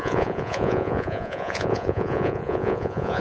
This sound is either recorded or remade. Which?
remade